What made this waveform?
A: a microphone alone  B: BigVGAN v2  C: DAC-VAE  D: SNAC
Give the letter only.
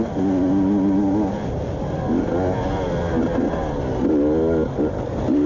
A